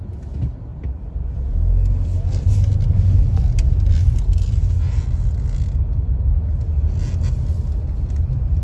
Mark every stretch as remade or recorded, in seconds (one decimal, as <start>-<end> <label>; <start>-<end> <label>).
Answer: 0.0-0.7 recorded; 0.7-2.5 remade; 2.5-8.6 recorded

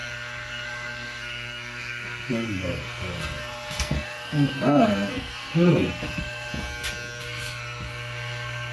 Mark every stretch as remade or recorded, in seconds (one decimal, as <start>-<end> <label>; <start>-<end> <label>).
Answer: 0.0-6.5 remade; 6.5-7.2 recorded; 7.2-8.7 remade

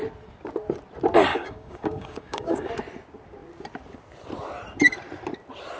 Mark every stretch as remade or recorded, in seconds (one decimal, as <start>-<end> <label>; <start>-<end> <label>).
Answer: 0.0-1.3 recorded; 1.3-2.7 remade; 2.7-5.8 recorded